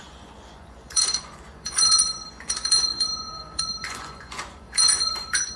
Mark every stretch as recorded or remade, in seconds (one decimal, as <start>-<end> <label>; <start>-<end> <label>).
0.0-5.6 remade

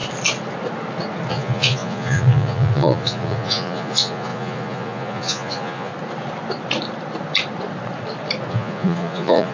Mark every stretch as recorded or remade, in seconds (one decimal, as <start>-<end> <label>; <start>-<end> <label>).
0.0-1.3 recorded; 1.3-5.9 remade; 5.9-8.5 recorded; 8.5-9.5 remade

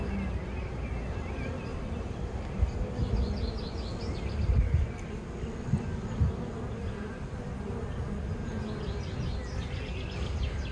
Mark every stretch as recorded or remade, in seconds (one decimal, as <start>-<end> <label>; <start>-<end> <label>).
0.0-10.7 recorded

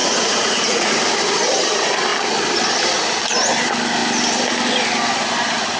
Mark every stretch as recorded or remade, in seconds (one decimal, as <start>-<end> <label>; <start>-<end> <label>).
0.0-0.9 remade; 0.9-5.8 recorded

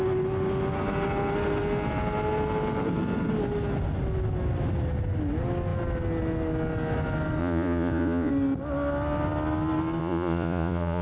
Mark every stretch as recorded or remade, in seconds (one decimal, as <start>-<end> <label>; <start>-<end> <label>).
0.0-7.4 recorded; 7.4-8.3 remade; 8.3-10.0 recorded; 10.0-11.0 remade

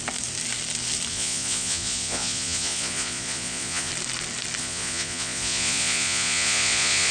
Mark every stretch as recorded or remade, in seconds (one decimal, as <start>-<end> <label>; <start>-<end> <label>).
0.0-1.1 recorded; 1.1-3.9 remade; 3.9-4.6 recorded; 4.6-7.1 remade

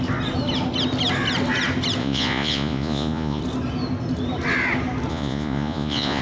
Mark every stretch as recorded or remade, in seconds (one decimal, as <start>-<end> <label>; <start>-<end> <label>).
0.0-2.0 recorded; 2.0-3.4 remade; 3.4-5.1 recorded; 5.1-6.2 remade

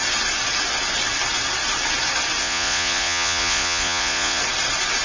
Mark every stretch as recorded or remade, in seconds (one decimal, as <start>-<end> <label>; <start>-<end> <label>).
0.0-2.4 recorded; 2.4-4.4 remade; 4.4-5.0 recorded